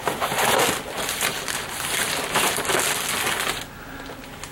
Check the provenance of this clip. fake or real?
real